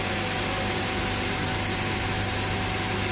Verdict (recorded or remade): recorded